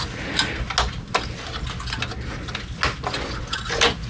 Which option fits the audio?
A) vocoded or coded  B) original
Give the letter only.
B